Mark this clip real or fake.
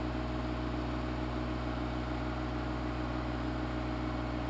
real